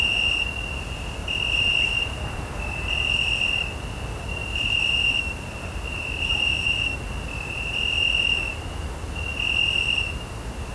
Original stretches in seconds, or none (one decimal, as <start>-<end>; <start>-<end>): 0.0-1.2; 2.9-4.4; 7.0-10.7